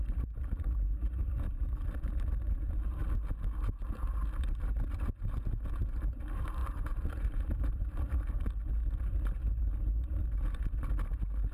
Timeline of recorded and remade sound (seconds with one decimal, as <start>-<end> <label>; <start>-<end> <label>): 0.0-3.0 remade; 3.0-5.8 recorded; 5.8-11.5 remade